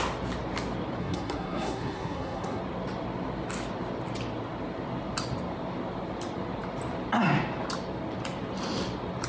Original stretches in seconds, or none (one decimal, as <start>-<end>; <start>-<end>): 0.0-1.0; 2.6-9.3